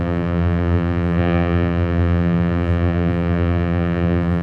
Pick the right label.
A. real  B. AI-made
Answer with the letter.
B